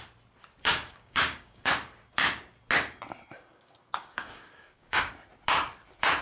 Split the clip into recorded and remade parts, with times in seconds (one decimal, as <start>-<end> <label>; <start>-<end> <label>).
0.0-0.6 recorded; 0.6-1.7 remade; 1.7-3.5 recorded; 3.5-5.1 remade; 5.1-6.2 recorded